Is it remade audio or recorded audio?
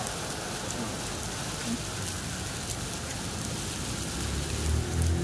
recorded